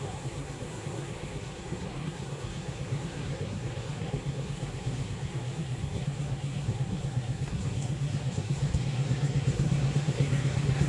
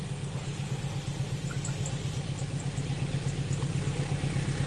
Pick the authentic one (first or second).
second